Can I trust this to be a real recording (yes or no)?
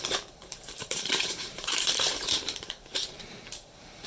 no